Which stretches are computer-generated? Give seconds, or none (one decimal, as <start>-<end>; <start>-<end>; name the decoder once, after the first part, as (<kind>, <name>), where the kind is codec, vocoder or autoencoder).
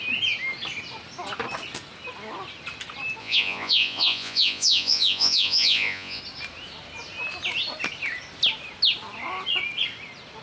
3.2-6.2 (vocoder, Vocos)